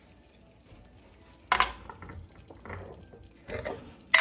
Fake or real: real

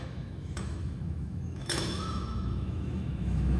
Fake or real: fake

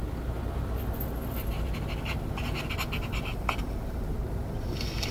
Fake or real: real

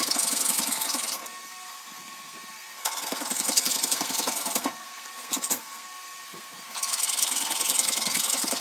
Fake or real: fake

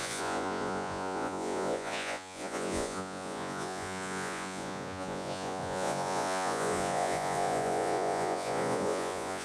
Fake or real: fake